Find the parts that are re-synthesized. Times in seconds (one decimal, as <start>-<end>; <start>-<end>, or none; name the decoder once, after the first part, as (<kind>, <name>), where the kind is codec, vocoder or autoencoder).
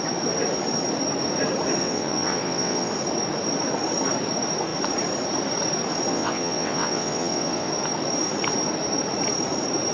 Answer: 1.8-2.9 (vocoder, WaveNeXt); 6.1-7.7